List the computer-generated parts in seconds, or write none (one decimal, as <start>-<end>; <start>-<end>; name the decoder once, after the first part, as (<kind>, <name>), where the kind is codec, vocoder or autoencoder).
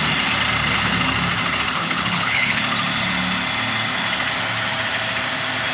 1.7-2.6 (codec, HILCodec)